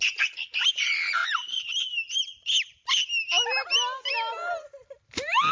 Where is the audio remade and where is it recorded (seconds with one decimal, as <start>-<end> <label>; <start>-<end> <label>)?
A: 0.0-1.2 remade; 1.2-4.5 recorded; 4.5-5.5 remade